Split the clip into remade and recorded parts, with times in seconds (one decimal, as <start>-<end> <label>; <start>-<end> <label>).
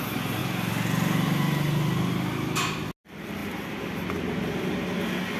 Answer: 0.0-5.4 recorded